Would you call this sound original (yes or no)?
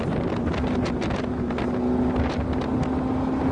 yes